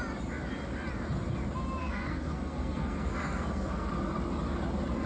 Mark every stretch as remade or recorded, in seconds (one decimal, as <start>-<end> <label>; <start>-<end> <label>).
0.0-1.8 recorded; 1.8-3.9 remade; 3.9-5.1 recorded

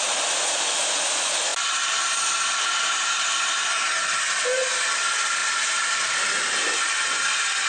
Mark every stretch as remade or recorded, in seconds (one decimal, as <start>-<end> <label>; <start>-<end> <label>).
0.0-7.7 recorded

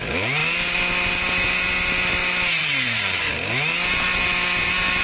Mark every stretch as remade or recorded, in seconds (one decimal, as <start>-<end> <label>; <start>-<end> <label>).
0.0-2.6 recorded; 2.6-3.3 remade; 3.3-5.0 recorded

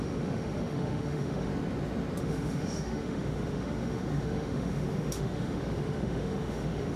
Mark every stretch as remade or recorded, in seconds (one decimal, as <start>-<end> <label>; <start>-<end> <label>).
0.0-1.5 remade; 1.5-2.2 recorded; 2.2-7.0 remade

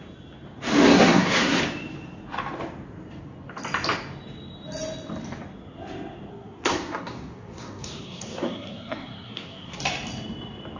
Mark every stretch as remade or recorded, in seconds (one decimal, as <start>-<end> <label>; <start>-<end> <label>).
0.0-0.9 recorded; 0.9-1.6 remade; 1.6-6.3 recorded; 6.3-9.8 remade; 9.8-10.8 recorded

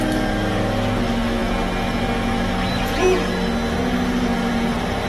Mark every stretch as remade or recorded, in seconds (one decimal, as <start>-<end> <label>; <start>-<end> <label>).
0.0-5.1 recorded

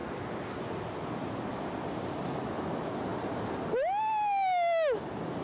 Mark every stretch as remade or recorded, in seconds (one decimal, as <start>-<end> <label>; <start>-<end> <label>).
0.0-5.4 recorded

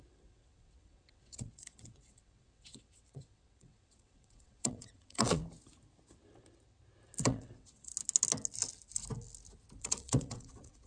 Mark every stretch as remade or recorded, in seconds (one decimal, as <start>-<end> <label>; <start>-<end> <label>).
0.0-5.4 remade; 5.4-7.2 recorded; 7.2-7.9 remade; 7.9-9.8 recorded; 9.8-10.9 remade